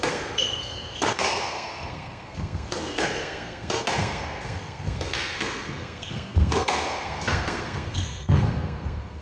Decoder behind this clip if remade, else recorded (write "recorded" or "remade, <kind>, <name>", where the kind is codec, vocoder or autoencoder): remade, codec, SNAC